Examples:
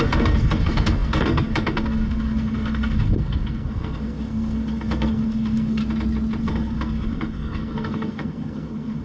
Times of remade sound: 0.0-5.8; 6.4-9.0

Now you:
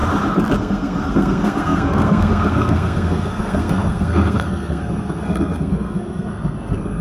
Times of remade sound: 0.6-7.0

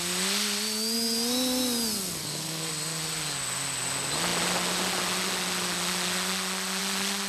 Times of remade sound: 2.2-2.7

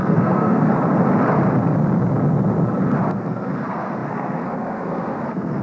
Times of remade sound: 0.0-0.7; 3.1-5.6

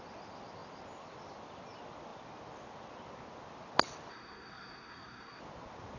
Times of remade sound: 4.1-5.4